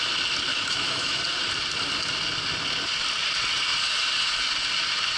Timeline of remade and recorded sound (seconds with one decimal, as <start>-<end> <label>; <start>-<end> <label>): 0.0-0.5 recorded; 0.5-1.2 remade; 1.2-5.2 recorded